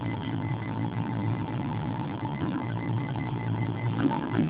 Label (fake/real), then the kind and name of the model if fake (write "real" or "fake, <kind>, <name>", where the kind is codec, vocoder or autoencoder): fake, vocoder, Vocos